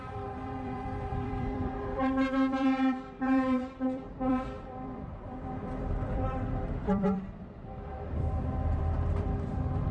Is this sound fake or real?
fake